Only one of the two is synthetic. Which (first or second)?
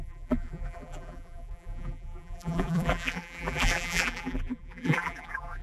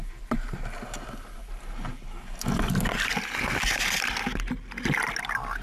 first